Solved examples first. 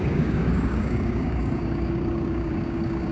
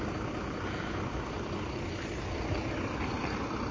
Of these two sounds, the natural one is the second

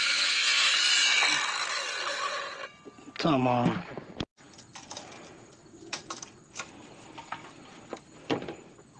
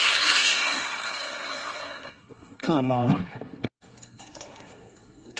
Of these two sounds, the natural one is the first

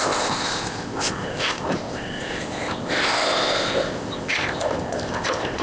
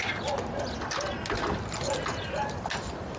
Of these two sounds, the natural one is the second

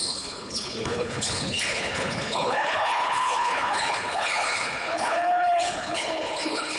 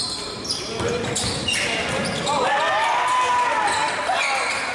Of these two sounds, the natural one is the second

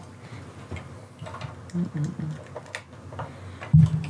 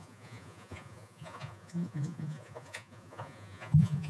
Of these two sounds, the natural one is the first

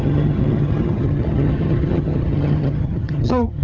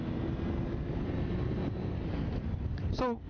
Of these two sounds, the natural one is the second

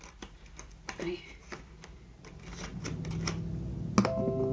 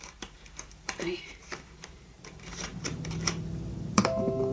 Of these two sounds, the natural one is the first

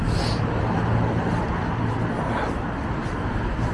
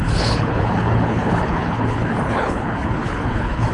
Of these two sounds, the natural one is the first